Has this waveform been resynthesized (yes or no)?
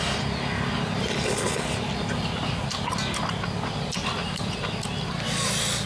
no